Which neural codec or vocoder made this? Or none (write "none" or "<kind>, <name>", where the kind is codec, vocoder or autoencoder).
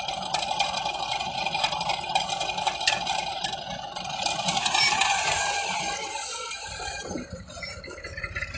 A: vocoder, BigVGAN v2